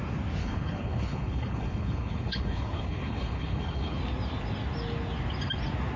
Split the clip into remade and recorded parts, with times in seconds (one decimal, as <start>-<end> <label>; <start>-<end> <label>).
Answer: 0.0-0.4 recorded; 0.4-4.0 remade; 4.0-6.0 recorded